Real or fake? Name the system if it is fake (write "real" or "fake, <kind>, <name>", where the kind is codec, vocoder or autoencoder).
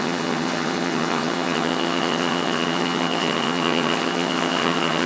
fake, vocoder, HiFi-GAN